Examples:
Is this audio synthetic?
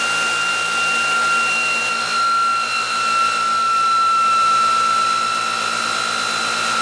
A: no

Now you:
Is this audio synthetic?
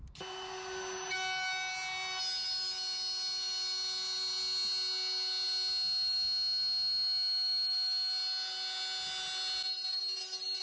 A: no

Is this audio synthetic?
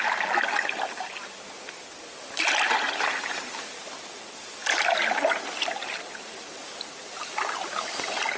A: yes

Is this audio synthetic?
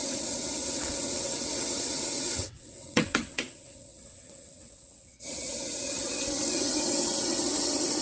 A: yes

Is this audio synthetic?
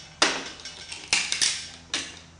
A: no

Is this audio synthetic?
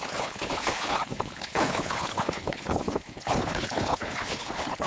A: yes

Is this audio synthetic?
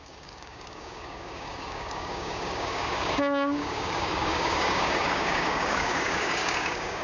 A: yes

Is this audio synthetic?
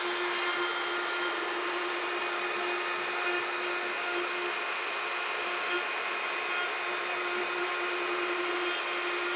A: no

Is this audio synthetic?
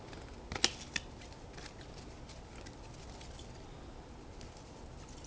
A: no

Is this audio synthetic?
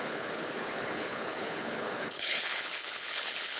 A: yes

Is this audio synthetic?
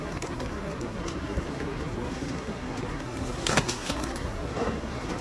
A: yes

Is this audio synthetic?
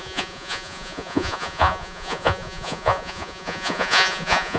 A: yes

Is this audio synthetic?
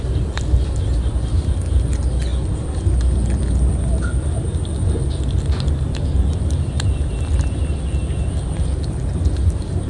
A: no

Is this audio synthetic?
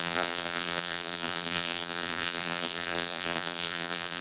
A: yes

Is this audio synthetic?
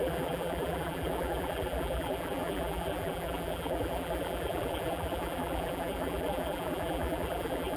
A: yes